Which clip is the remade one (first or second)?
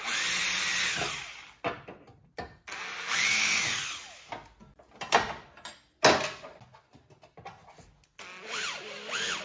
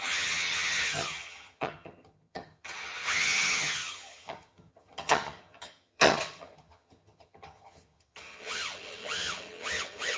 second